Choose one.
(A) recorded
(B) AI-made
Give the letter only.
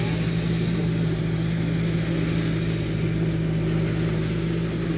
A